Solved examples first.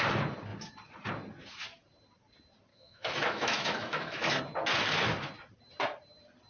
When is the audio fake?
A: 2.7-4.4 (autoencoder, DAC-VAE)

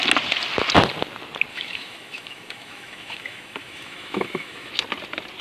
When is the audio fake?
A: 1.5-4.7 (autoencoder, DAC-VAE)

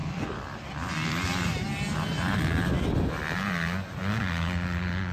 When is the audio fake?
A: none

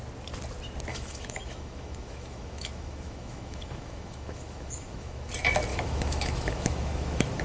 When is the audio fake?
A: 0.9-5.3 (autoencoder, DAC-VAE); 5.7-7.4

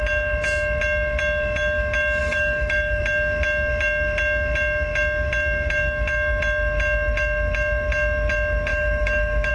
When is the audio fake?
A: 2.2-3.0 (autoencoder, DAC-VAE); 8.7-9.5

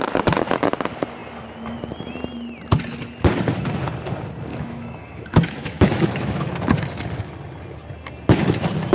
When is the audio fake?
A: 4.5-6.5 (autoencoder, DAC-VAE)

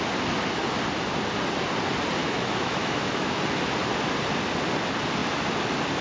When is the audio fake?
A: 2.2-3.4 (autoencoder, DAC-VAE)